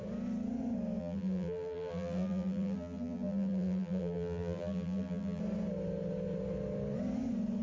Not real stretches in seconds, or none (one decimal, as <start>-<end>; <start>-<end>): 1.0-5.4